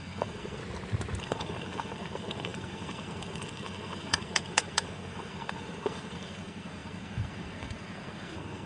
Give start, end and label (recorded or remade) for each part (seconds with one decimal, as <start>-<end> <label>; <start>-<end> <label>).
0.0-0.6 remade; 0.6-1.2 recorded; 1.2-8.7 remade